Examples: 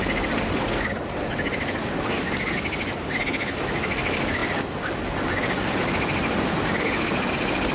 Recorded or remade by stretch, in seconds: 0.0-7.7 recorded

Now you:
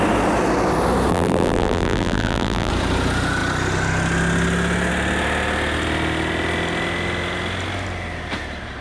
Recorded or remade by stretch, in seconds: 0.0-1.1 recorded; 1.1-2.7 remade; 2.7-8.8 recorded

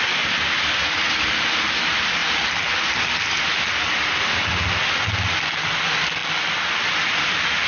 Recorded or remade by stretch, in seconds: 0.0-7.7 recorded